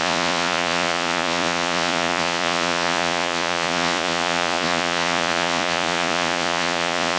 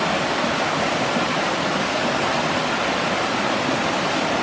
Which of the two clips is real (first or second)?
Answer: second